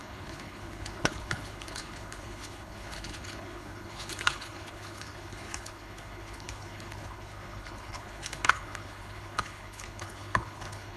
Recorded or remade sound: remade